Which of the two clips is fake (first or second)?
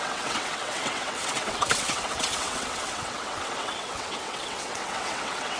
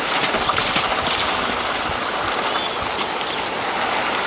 first